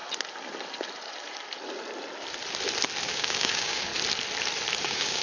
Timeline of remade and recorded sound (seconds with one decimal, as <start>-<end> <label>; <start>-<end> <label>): 0.0-3.1 recorded; 3.1-3.9 remade; 3.9-4.8 recorded; 4.8-5.2 remade